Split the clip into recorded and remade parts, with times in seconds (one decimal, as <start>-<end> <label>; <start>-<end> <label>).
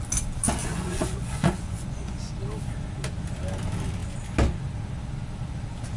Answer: 0.0-0.6 recorded; 0.6-2.3 remade; 2.3-6.0 recorded